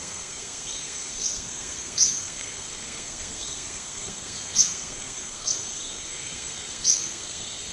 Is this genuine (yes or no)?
no